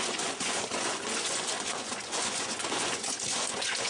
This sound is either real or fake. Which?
fake